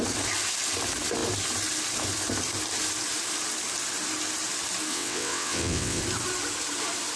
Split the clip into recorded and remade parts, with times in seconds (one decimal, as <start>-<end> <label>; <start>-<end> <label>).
0.0-4.9 recorded; 4.9-6.0 remade; 6.0-7.2 recorded